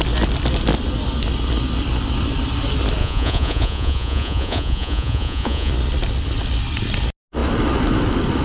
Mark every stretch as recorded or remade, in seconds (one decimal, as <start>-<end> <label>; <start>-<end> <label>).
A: 0.0-3.0 recorded; 3.0-5.7 remade; 5.7-8.4 recorded